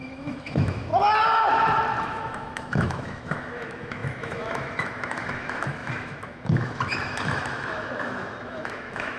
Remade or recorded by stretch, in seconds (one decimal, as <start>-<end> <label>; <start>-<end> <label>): 0.0-0.9 remade; 0.9-2.0 recorded; 2.0-9.2 remade